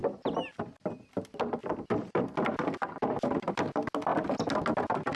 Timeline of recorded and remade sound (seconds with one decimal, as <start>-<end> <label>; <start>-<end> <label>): 0.0-5.2 recorded